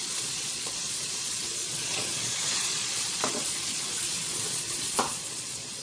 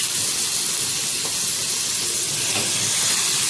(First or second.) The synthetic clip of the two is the first